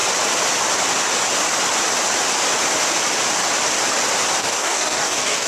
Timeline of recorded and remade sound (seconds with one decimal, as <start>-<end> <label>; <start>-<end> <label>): 0.0-4.4 recorded; 4.4-5.5 remade